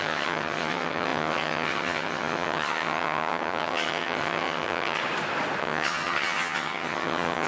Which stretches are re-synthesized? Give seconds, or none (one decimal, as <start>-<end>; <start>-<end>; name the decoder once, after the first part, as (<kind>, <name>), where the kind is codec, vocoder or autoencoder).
0.0-5.0 (vocoder, HiFi-GAN); 5.6-7.5